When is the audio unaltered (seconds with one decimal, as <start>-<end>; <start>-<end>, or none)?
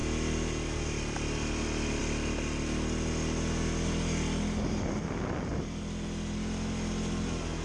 0.0-7.6